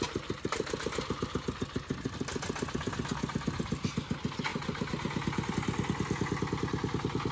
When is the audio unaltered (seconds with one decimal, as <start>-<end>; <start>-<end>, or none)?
0.0-7.3